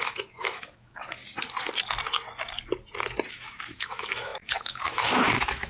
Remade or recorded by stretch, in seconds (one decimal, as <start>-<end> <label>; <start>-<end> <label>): 0.0-1.2 remade; 1.2-3.3 recorded; 3.3-5.7 remade